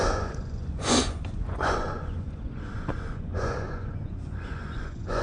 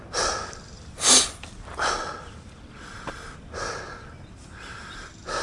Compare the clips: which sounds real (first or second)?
second